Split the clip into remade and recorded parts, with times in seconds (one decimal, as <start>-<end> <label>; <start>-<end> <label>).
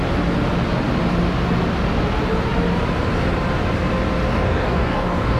0.0-4.3 recorded; 4.3-5.4 remade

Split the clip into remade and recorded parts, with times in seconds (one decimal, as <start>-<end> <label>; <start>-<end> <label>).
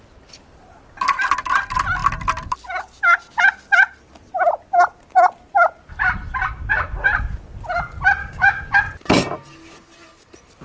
0.0-8.2 recorded; 8.2-8.8 remade; 8.8-10.6 recorded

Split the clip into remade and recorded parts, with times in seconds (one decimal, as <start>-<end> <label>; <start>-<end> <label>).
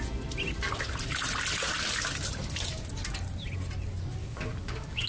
0.0-4.2 recorded; 4.2-5.1 remade